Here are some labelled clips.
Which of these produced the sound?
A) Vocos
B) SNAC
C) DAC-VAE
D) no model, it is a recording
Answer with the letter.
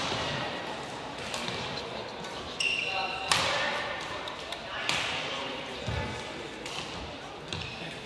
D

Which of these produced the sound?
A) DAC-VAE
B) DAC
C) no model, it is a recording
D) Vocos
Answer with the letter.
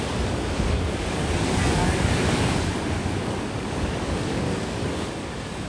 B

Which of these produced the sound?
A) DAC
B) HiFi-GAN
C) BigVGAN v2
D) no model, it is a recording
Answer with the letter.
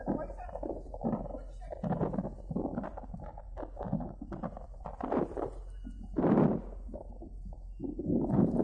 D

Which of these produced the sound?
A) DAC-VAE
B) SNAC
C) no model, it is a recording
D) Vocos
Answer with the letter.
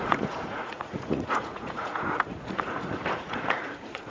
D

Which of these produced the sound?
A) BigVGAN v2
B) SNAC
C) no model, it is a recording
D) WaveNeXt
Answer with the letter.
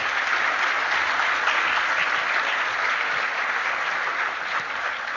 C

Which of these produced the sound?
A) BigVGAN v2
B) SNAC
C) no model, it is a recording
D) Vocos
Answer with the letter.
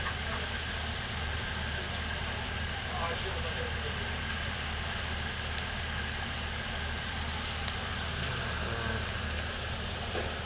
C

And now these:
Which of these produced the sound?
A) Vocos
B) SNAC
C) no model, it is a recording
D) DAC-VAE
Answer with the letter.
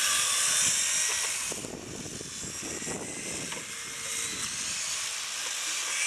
C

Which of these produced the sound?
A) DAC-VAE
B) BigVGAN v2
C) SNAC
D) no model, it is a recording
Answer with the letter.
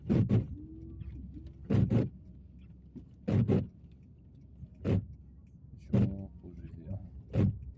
D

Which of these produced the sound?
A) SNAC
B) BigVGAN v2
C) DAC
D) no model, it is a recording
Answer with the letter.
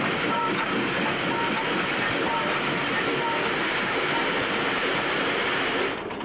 B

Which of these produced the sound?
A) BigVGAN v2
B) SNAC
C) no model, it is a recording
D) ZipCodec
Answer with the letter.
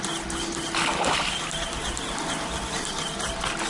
C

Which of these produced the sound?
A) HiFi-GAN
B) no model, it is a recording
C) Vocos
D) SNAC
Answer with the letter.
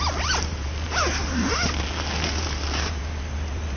B